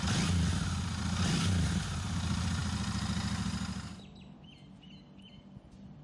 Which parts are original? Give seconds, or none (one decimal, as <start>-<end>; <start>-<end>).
0.0-6.0